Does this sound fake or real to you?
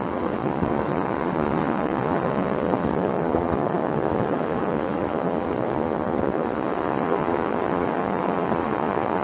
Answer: fake